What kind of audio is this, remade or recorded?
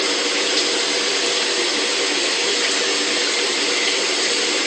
recorded